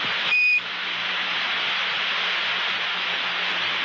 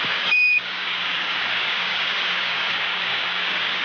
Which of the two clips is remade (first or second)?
second